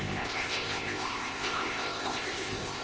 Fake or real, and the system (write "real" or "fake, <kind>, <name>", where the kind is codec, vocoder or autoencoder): fake, codec, ZipCodec